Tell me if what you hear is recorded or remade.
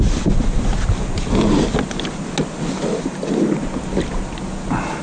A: recorded